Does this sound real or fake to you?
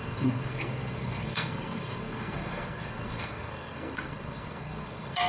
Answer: fake